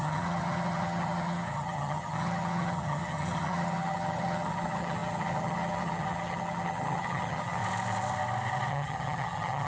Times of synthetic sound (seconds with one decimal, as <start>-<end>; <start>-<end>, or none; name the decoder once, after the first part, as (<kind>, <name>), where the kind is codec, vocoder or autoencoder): 0.0-7.6 (vocoder, HiFi-GAN); 8.7-9.7